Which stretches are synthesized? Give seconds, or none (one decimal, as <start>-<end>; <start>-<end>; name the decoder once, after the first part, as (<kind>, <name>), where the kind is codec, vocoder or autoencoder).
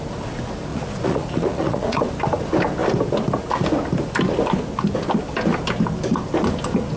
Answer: 0.7-2.0 (vocoder, Vocos)